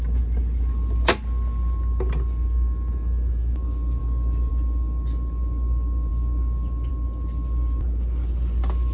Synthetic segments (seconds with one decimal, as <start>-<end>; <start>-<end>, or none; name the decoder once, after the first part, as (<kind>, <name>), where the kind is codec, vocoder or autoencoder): 4.0-4.5 (codec, DAC)